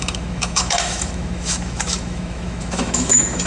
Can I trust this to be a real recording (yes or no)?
no